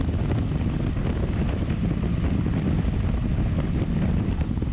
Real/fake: real